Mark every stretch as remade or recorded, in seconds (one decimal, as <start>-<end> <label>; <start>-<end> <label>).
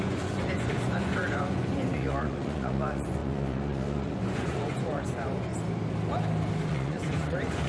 0.0-5.5 remade; 5.5-6.7 recorded; 6.7-7.7 remade